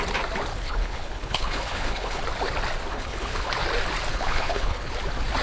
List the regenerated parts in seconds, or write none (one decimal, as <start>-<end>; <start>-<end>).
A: 0.5-2.2; 2.9-3.5; 4.1-4.9

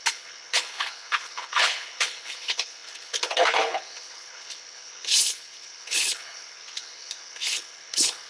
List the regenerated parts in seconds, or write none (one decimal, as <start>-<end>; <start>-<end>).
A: 0.0-8.3

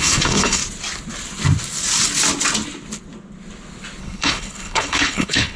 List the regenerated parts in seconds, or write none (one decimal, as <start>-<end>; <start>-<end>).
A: 0.0-0.6; 4.0-5.6

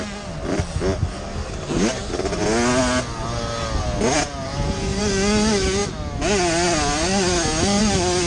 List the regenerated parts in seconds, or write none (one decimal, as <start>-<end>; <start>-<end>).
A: none